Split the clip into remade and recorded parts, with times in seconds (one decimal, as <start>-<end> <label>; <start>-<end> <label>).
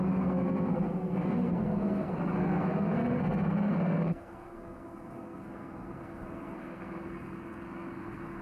0.0-8.4 remade